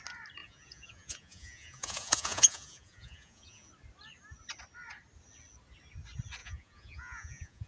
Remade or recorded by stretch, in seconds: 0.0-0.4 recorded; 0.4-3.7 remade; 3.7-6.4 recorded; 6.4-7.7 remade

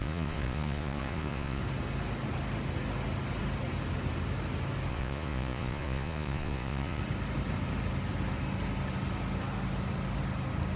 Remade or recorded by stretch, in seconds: 0.0-1.6 remade; 1.6-4.9 recorded; 4.9-7.0 remade; 7.0-10.8 recorded

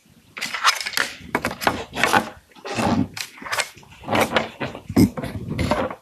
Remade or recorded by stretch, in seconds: 0.0-6.0 recorded

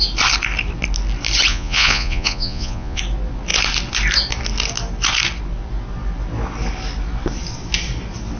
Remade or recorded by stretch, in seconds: 0.0-1.5 recorded; 1.5-3.0 remade; 3.0-8.4 recorded

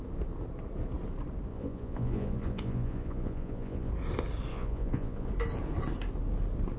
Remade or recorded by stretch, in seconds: 0.0-1.5 recorded; 1.5-3.9 remade; 3.9-4.5 recorded; 4.5-5.3 remade; 5.3-6.8 recorded

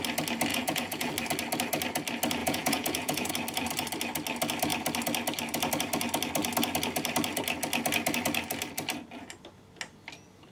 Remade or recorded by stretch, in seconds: 0.0-0.5 recorded; 0.5-1.1 remade; 1.1-2.4 recorded; 2.4-3.3 remade; 3.3-10.5 recorded

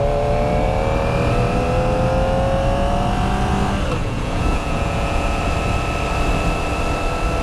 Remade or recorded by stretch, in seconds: 0.0-4.0 recorded; 4.0-5.4 remade; 5.4-7.4 recorded

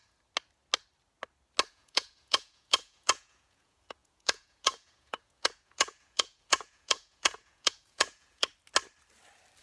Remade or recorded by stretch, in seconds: 0.0-1.7 recorded; 1.7-8.5 remade; 8.5-9.6 recorded